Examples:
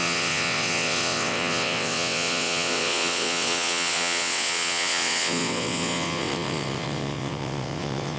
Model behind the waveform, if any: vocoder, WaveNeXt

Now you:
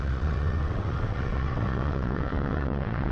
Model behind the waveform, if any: vocoder, WaveNeXt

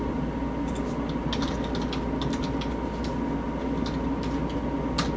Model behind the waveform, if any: none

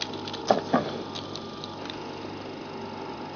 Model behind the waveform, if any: none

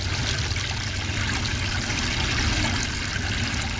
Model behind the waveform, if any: none